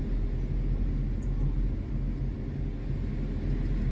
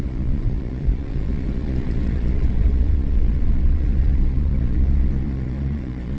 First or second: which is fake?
second